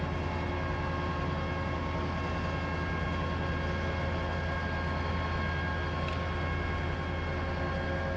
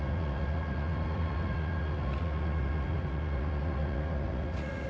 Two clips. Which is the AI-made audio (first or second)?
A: second